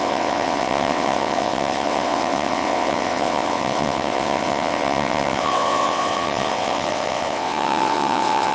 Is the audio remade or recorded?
remade